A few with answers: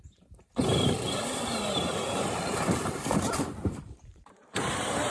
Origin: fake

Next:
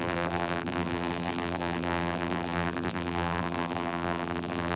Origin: fake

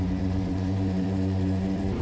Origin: fake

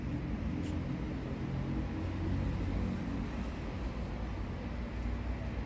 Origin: real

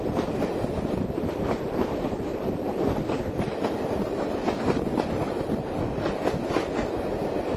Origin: real